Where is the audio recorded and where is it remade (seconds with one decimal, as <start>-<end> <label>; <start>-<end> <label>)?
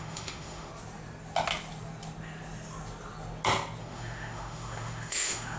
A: 0.0-0.7 remade; 0.7-3.8 recorded; 3.8-5.6 remade